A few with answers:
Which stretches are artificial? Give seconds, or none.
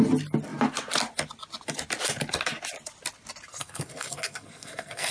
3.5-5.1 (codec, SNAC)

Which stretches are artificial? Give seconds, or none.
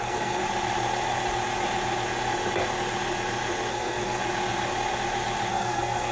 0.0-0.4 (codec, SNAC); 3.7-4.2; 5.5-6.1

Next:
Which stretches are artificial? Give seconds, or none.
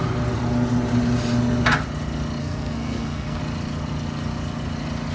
2.4-3.4 (codec, SNAC)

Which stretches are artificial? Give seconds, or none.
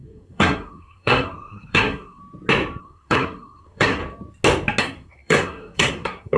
0.0-2.2 (codec, SNAC); 2.8-4.0; 4.8-6.4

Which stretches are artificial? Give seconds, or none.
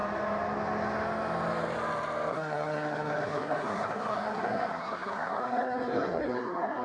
2.3-6.8 (codec, SNAC)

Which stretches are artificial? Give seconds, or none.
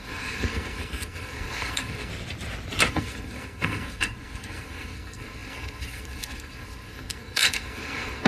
0.0-2.1 (codec, SNAC); 2.9-8.3